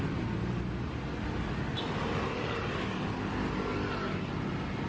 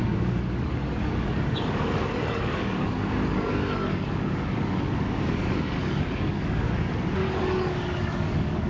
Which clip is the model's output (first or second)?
second